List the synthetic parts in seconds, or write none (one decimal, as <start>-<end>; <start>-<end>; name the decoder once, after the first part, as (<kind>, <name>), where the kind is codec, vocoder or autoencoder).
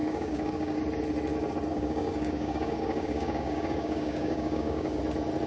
0.0-0.8 (codec, DAC); 1.7-5.0